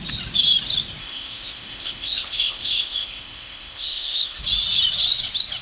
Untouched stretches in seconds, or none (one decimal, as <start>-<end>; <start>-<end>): 0.0-1.0; 4.4-5.6